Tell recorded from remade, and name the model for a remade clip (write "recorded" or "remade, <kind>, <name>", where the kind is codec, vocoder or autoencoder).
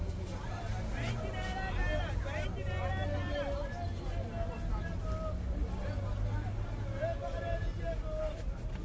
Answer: recorded